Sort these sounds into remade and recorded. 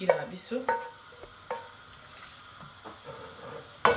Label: recorded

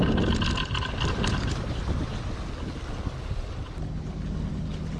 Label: recorded